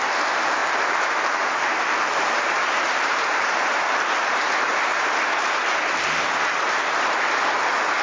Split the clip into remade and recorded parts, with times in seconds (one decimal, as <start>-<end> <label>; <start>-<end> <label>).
0.0-0.6 recorded; 0.6-4.4 remade; 4.4-8.0 recorded